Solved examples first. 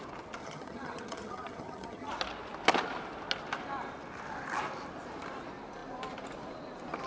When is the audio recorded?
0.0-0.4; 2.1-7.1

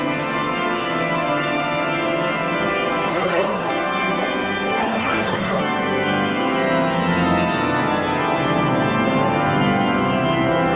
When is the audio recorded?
0.0-3.1; 3.7-4.8; 5.6-10.8

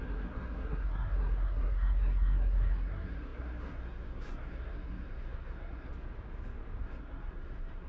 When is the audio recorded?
5.9-6.8